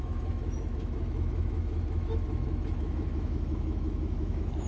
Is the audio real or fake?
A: fake